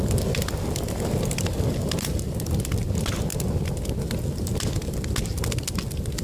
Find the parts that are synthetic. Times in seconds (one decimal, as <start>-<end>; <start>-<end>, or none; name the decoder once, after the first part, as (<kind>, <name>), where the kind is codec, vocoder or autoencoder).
none